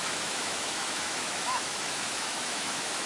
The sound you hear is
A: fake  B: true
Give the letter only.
A